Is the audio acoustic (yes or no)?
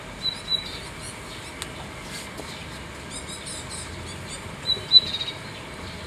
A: yes